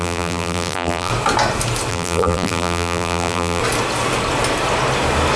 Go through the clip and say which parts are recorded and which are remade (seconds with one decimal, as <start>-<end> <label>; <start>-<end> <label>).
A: 0.0-1.1 remade; 1.1-1.9 recorded; 1.9-3.6 remade; 3.6-5.4 recorded